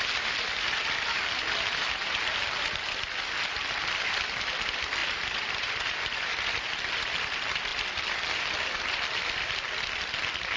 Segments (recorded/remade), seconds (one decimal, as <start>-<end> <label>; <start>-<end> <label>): 0.0-5.0 recorded; 5.0-6.6 remade; 6.6-10.6 recorded